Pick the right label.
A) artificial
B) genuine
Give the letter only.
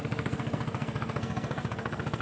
A